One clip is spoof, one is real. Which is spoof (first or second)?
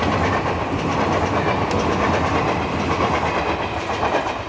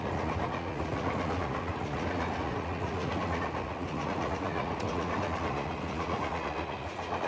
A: second